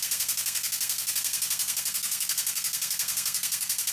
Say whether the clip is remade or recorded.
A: remade